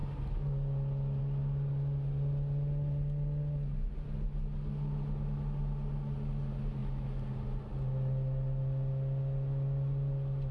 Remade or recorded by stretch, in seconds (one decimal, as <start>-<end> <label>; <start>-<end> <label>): 0.0-10.5 recorded